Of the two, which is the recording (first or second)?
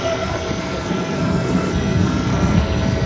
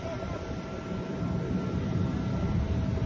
second